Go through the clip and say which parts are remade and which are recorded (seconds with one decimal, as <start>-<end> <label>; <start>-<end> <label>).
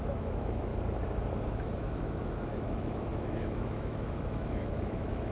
0.0-0.7 remade; 0.7-1.5 recorded; 1.5-5.3 remade